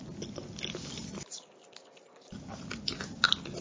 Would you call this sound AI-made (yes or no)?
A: no